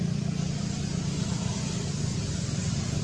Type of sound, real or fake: real